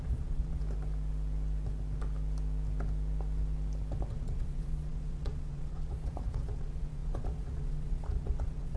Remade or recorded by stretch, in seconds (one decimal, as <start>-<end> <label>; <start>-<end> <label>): 0.0-0.6 remade; 0.6-4.1 recorded; 4.1-8.8 remade